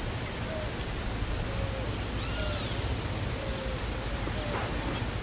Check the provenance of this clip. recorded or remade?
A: recorded